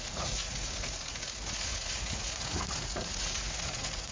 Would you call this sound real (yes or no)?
no